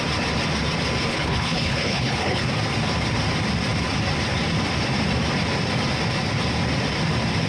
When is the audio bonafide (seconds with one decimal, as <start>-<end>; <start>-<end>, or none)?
0.0-1.1; 2.5-7.5